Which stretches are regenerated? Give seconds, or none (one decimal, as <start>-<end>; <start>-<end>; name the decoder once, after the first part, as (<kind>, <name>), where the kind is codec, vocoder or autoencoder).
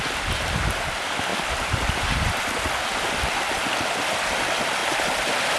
none